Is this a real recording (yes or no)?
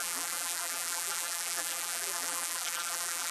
no